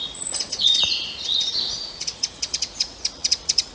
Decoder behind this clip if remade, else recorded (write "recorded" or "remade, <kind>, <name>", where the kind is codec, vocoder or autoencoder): remade, vocoder, Vocos